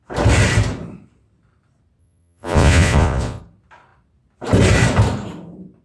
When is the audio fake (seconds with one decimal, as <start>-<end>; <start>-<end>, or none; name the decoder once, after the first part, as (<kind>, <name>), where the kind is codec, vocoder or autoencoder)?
2.0-3.4 (vocoder, Vocos)